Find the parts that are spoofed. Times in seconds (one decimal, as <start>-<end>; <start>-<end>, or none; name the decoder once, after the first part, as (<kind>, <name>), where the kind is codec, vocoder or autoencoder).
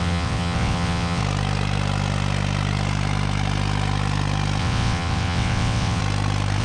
0.0-1.2 (vocoder, WaveNeXt); 4.6-6.0